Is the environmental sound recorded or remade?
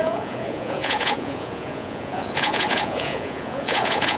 remade